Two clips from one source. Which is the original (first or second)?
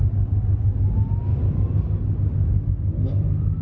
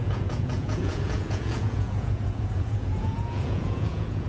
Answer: first